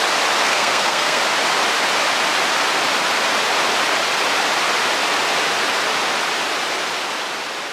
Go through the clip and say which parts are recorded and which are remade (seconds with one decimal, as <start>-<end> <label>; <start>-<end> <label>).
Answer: 0.0-0.4 recorded; 0.4-1.2 remade; 1.2-7.7 recorded